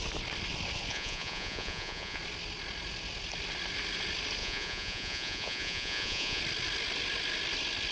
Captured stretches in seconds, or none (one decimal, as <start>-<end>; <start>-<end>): 0.0-0.9; 2.2-4.4; 6.4-7.9